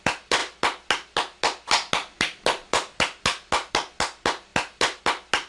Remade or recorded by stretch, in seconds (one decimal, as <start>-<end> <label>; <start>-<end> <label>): 0.0-5.5 recorded

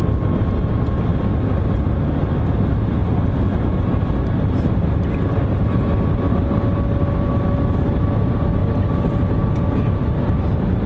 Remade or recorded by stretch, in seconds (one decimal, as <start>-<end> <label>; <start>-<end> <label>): 0.0-10.9 recorded

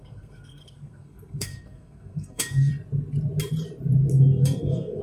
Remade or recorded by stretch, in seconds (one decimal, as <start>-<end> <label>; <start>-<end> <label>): 0.0-2.7 remade; 2.7-4.1 recorded; 4.1-5.0 remade

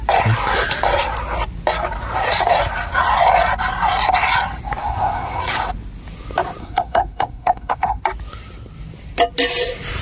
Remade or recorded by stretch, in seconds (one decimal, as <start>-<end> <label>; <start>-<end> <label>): 0.0-4.8 recorded; 4.8-5.4 remade; 5.4-6.6 recorded; 6.6-8.0 remade; 8.0-10.0 recorded

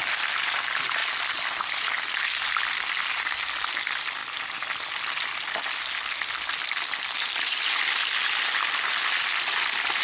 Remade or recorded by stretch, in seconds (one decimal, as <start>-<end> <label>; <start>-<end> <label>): 0.0-10.0 recorded

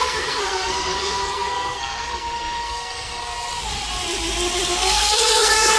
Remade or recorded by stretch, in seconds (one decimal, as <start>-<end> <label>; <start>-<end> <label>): 0.0-3.2 remade; 3.2-4.7 recorded; 4.7-5.8 remade